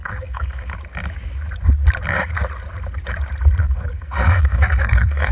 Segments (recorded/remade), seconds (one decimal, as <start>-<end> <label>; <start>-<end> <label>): 0.0-0.7 remade; 0.7-3.6 recorded; 3.6-5.3 remade